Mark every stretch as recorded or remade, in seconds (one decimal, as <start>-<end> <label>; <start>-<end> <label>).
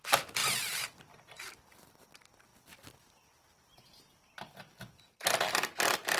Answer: 0.0-0.4 recorded; 0.4-1.0 remade; 1.0-6.2 recorded